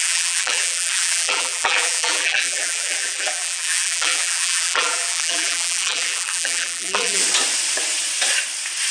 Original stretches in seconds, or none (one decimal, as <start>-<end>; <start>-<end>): 7.2-8.9